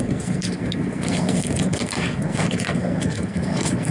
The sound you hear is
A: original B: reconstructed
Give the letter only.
B